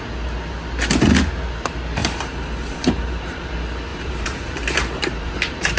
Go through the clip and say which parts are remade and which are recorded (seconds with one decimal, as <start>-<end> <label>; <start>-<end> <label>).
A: 0.0-2.0 recorded; 2.0-3.5 remade; 3.5-3.9 recorded; 3.9-5.8 remade